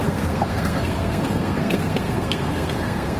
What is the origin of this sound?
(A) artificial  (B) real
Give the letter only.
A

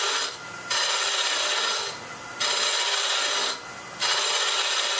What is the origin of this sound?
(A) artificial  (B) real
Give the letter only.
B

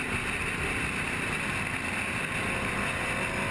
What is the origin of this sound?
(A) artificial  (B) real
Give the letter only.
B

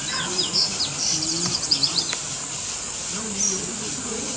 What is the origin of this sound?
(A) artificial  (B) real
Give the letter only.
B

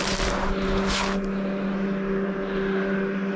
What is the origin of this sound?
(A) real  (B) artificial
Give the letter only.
A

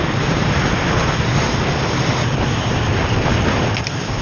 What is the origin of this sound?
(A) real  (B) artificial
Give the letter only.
A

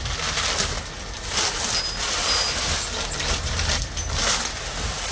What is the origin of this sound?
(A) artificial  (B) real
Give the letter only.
B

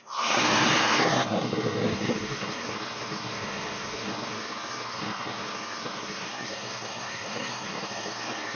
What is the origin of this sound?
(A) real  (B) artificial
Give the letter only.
B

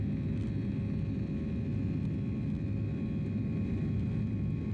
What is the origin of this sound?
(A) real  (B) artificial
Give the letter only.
A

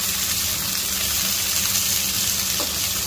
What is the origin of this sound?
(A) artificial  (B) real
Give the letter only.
B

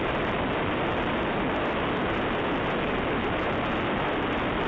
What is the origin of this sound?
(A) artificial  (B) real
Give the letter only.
B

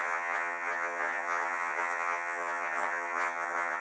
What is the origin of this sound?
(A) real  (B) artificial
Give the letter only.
B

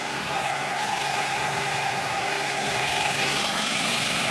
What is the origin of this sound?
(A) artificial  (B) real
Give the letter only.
A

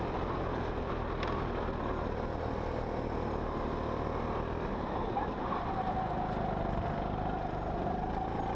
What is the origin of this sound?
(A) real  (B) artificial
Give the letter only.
A